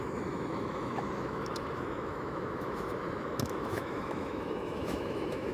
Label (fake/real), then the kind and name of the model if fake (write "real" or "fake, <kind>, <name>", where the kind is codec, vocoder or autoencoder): fake, autoencoder, DAC-VAE